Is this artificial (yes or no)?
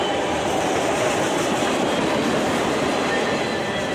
yes